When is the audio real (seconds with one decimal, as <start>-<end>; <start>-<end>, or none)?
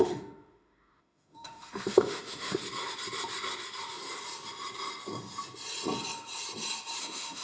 2.6-7.0